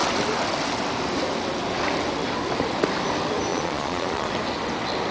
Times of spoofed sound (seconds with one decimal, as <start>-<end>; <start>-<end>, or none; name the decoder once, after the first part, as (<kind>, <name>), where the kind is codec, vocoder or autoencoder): 3.5-4.3 (vocoder, Vocos)